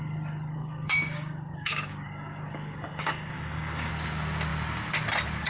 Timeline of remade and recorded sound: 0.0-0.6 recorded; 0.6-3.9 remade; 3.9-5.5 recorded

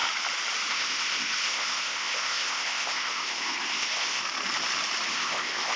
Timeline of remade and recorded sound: 0.0-0.7 recorded; 0.7-4.2 remade; 4.2-5.1 recorded; 5.1-5.8 remade

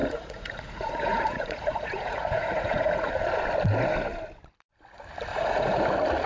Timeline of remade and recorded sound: 0.0-3.1 remade; 3.1-5.3 recorded; 5.3-5.8 remade; 5.8-6.3 recorded

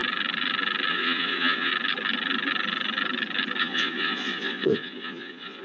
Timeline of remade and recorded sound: 0.0-0.9 recorded; 0.9-1.7 remade; 1.7-3.6 recorded; 3.6-5.6 remade